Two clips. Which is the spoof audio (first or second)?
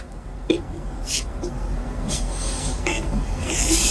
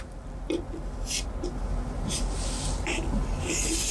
first